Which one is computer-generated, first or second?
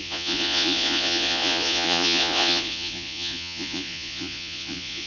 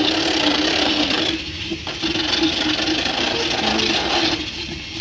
first